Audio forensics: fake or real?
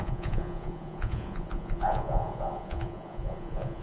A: fake